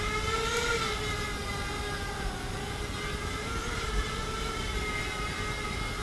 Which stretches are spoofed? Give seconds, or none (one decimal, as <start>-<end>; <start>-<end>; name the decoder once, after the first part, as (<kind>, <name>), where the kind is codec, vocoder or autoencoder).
3.6-4.8 (vocoder, BigVGAN v2)